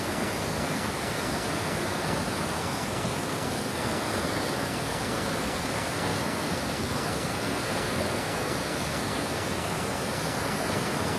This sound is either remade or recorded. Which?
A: remade